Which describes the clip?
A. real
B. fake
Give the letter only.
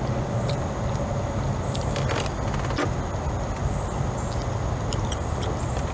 A